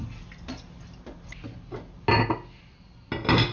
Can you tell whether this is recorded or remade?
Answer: recorded